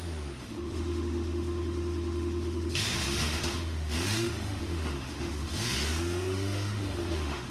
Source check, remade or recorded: remade